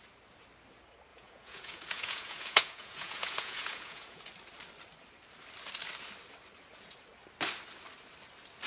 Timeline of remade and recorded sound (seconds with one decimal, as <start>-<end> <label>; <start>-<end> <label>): 0.0-1.1 recorded; 1.1-4.2 remade; 4.2-8.7 recorded